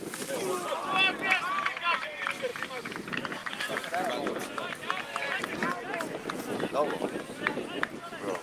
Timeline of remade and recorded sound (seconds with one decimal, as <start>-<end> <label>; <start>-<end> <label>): 0.0-8.4 recorded